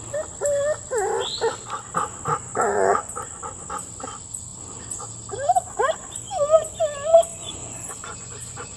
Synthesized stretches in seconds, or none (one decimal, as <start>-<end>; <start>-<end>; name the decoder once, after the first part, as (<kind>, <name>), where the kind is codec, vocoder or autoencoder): 2.4-3.1 (vocoder, Vocos); 7.3-8.8